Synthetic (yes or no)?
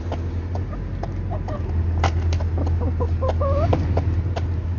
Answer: no